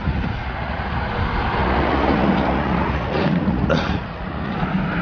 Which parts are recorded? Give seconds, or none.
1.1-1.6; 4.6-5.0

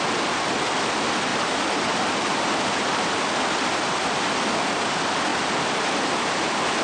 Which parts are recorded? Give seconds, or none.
0.0-1.3; 3.1-6.8